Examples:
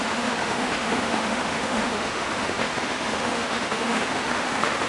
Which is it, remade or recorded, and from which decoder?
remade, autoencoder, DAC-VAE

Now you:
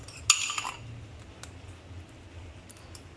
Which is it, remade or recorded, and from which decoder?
recorded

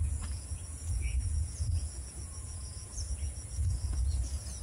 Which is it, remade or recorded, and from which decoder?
remade, vocoder, Vocos